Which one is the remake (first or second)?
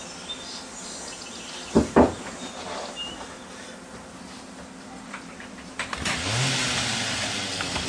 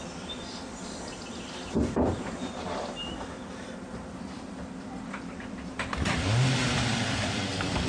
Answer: second